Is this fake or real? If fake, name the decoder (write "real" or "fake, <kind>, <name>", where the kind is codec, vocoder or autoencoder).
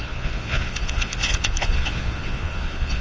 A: fake, vocoder, Vocos